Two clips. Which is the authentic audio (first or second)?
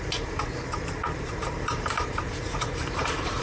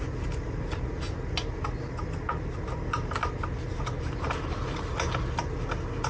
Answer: second